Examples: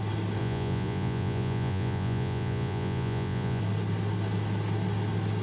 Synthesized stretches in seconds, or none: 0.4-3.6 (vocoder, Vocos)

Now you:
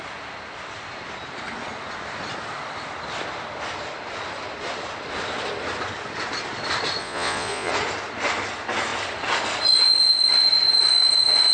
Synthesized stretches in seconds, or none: 7.0-7.7 (vocoder, Vocos)